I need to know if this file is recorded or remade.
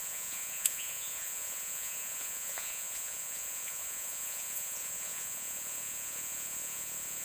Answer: remade